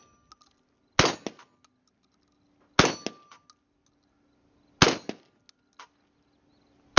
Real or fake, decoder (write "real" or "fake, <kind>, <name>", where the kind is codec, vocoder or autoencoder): real